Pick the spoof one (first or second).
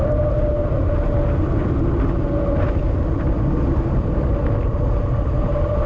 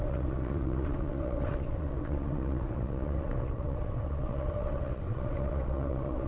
second